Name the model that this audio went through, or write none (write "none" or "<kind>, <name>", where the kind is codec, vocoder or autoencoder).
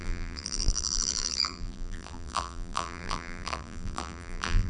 vocoder, BigVGAN v2